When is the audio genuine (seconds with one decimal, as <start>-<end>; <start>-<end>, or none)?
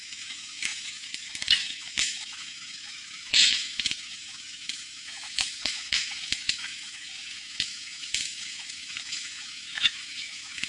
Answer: none